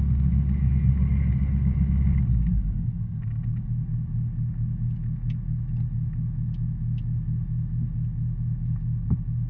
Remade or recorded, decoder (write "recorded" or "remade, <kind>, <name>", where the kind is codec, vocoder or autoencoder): recorded